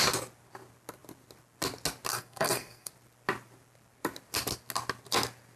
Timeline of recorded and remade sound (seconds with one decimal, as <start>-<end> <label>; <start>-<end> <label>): 0.0-2.1 recorded; 2.1-2.9 remade; 2.9-5.6 recorded